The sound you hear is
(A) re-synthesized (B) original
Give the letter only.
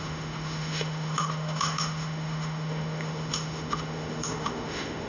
A